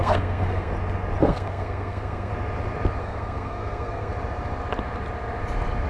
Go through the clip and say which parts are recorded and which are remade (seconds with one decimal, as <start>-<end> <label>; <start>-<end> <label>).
0.0-0.7 remade; 0.7-1.2 recorded; 1.2-2.3 remade; 2.3-3.0 recorded; 3.0-4.1 remade; 4.1-5.9 recorded